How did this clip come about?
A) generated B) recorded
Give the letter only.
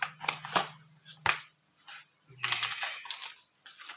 B